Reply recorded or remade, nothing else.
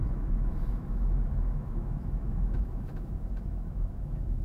remade